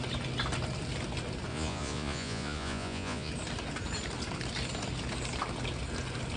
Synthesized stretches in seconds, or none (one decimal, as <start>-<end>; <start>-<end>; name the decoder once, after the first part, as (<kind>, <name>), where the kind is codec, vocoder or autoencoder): 1.5-3.3 (vocoder, Vocos)